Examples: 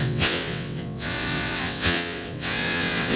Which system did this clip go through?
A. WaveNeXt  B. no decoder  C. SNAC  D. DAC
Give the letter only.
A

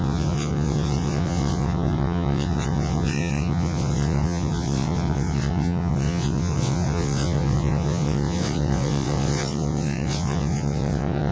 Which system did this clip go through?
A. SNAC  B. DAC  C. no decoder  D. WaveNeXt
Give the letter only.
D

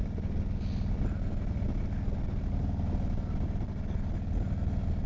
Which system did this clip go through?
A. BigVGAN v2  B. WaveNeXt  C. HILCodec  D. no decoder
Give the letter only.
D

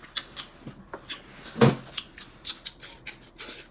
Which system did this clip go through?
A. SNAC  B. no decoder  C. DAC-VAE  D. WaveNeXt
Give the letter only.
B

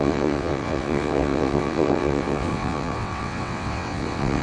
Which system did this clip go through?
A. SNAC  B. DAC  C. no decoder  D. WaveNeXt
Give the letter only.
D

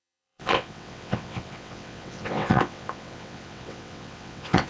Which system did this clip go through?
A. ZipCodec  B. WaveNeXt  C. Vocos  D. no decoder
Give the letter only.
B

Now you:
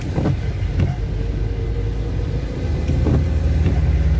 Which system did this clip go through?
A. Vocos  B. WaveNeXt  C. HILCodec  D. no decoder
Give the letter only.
D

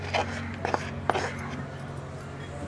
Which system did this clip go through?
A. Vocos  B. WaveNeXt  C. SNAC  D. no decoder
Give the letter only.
D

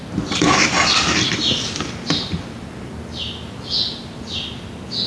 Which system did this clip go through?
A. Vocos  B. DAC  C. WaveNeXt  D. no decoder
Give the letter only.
D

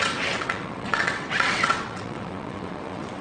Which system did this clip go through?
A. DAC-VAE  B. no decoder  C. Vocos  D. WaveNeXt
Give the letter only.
D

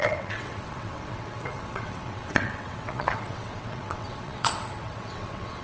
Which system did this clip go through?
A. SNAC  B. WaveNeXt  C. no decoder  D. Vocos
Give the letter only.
B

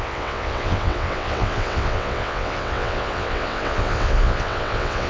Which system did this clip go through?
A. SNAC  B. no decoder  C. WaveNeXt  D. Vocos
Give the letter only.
C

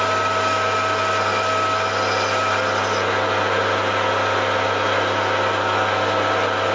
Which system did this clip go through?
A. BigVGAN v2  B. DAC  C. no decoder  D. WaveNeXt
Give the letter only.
C